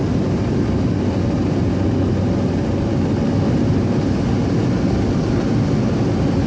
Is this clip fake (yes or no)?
no